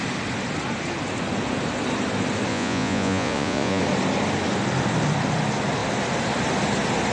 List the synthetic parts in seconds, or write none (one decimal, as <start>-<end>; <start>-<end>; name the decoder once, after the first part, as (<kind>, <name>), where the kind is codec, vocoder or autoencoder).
2.5-3.8 (vocoder, Vocos)